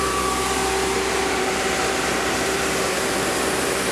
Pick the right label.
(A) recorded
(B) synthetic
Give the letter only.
B